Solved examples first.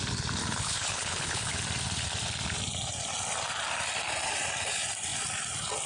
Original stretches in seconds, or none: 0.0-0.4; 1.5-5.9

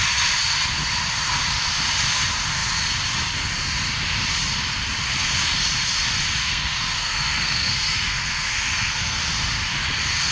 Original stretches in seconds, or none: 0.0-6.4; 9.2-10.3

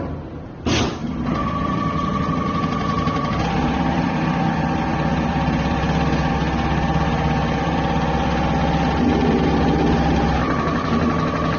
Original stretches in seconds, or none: 0.0-1.0; 6.3-11.6